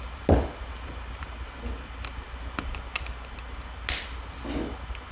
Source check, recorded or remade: recorded